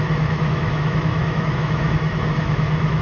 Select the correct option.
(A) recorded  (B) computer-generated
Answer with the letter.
B